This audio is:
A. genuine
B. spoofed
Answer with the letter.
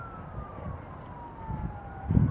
A